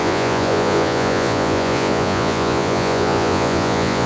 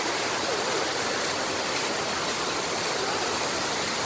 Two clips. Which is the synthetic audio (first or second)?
first